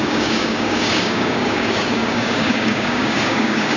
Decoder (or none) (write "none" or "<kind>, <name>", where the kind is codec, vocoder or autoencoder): codec, DAC